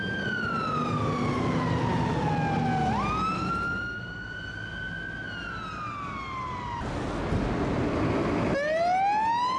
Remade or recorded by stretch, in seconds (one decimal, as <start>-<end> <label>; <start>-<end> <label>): 0.0-9.6 recorded